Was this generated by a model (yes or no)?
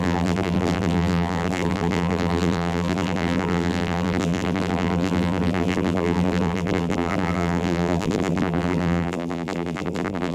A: yes